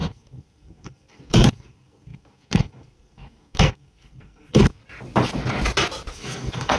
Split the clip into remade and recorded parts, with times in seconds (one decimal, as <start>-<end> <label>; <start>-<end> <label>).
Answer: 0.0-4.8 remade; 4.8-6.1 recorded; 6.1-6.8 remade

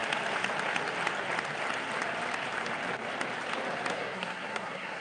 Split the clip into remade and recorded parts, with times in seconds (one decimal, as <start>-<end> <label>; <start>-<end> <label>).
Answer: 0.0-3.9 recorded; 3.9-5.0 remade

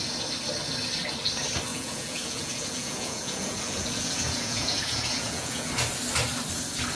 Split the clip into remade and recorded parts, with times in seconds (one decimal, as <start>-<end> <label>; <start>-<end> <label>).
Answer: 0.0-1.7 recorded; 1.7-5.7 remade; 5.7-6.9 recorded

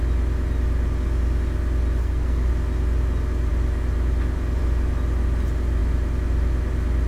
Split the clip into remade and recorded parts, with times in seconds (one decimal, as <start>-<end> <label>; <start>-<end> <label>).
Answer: 0.0-2.0 recorded; 2.0-2.5 remade; 2.5-7.1 recorded